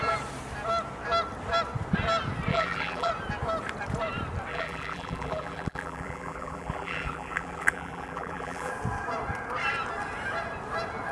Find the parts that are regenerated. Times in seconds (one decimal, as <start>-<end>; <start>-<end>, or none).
2.5-3.1; 4.5-8.7